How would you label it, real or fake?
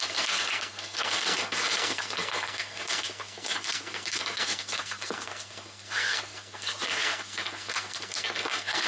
fake